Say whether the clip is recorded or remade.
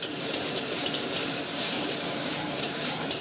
remade